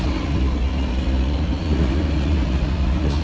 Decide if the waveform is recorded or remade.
remade